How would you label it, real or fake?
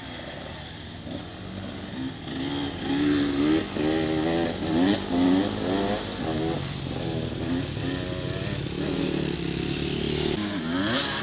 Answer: real